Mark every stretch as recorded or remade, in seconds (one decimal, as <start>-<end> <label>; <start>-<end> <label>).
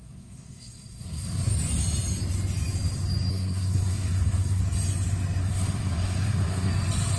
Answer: 0.0-1.5 remade; 1.5-3.3 recorded; 3.3-4.6 remade; 4.6-5.4 recorded; 5.4-6.7 remade; 6.7-7.2 recorded